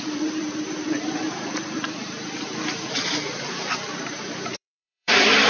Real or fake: fake